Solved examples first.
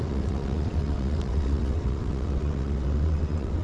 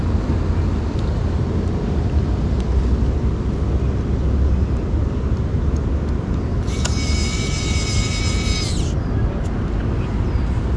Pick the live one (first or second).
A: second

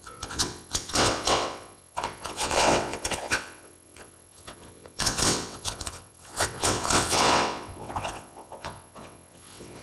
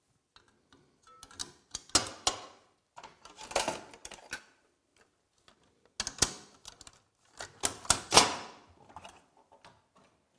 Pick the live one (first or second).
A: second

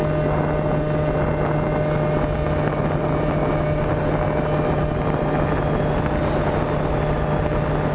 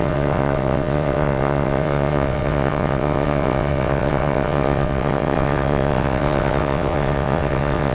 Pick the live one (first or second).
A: first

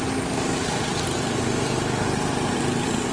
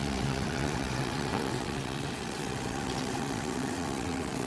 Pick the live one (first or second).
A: first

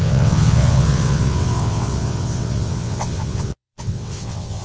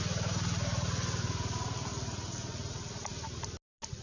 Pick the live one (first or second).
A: second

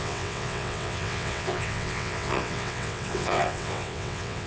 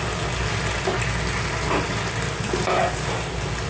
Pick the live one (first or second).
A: second